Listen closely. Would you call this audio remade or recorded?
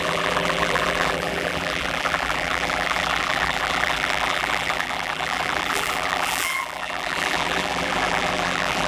remade